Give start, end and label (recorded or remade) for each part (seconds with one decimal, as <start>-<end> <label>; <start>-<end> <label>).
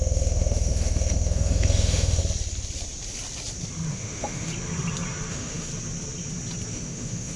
0.0-2.2 remade; 2.2-3.9 recorded; 3.9-4.5 remade; 4.5-5.3 recorded; 5.3-5.7 remade; 5.7-6.7 recorded; 6.7-7.4 remade